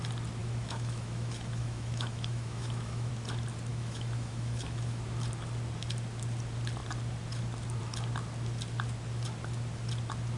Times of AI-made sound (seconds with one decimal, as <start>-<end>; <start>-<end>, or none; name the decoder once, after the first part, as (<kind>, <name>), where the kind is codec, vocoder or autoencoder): 0.4-3.1 (autoencoder, DAC-VAE); 3.7-5.0